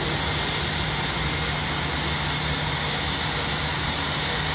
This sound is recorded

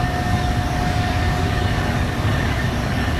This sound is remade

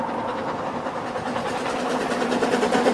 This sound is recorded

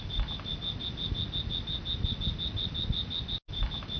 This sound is recorded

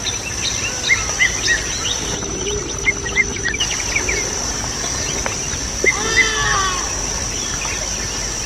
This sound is recorded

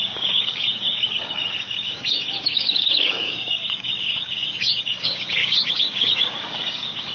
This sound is remade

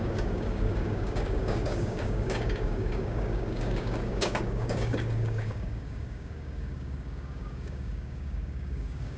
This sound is remade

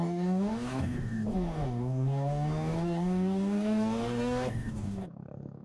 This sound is remade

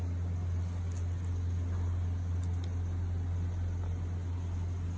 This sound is recorded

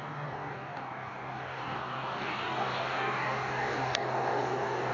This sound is remade